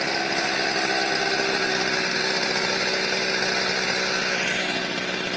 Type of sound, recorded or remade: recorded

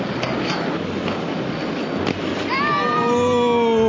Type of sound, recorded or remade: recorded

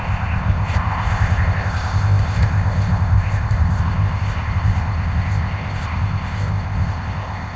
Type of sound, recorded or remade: remade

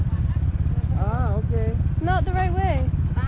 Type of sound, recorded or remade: recorded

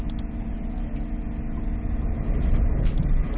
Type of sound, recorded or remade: recorded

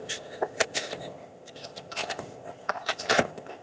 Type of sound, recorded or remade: remade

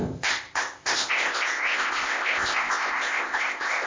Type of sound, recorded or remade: remade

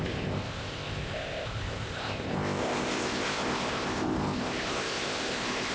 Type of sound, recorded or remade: remade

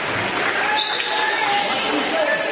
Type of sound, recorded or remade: recorded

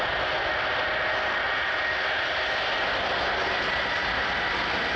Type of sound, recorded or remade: recorded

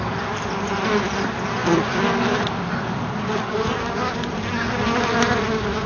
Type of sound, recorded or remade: recorded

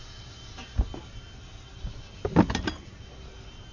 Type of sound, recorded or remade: recorded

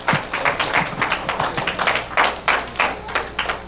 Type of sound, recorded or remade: recorded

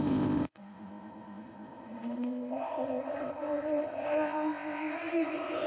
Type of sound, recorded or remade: remade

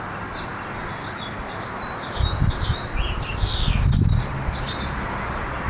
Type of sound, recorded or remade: recorded